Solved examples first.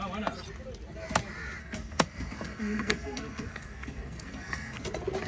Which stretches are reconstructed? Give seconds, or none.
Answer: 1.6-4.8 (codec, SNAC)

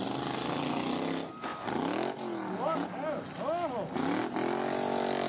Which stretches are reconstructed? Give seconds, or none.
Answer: none

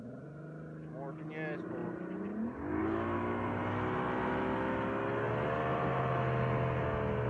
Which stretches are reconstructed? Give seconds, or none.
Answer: 5.7-6.2 (vocoder, BigVGAN v2)

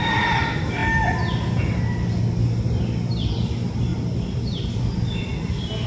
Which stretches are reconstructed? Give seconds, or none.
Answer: none

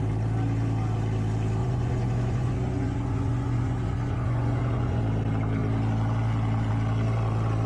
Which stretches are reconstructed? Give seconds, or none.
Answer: 1.6-5.0 (vocoder, Vocos)

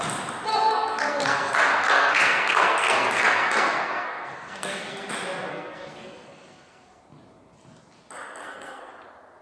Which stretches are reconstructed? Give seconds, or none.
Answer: 0.5-5.1 (codec, SNAC); 5.5-7.0; 8.4-8.9

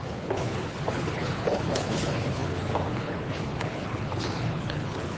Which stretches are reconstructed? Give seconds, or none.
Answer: 0.0-5.2 (codec, HILCodec)